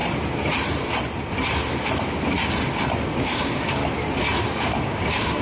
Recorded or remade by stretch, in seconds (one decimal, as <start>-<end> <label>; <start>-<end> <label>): 0.0-3.2 recorded; 3.2-3.8 remade; 3.8-4.5 recorded; 4.5-5.4 remade